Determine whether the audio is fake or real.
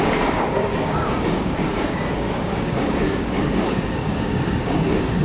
fake